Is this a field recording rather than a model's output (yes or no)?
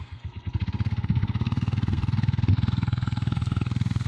no